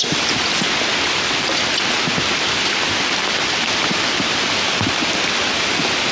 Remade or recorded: recorded